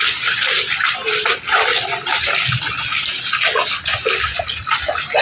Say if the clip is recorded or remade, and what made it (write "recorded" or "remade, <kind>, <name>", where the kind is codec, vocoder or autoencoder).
recorded